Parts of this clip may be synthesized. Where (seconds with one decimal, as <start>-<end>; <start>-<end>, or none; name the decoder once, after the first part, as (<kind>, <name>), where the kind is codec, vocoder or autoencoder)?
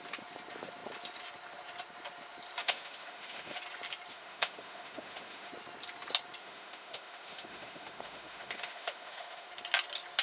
2.6-3.6 (autoencoder, DAC-VAE); 4.1-5.5; 6.4-9.5